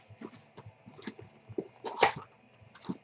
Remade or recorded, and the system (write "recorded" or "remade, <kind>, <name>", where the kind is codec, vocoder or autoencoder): recorded